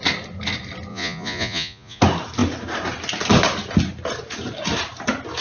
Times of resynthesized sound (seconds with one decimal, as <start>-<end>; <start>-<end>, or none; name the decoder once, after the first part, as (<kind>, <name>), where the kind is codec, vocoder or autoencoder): 0.9-2.0 (vocoder, Vocos)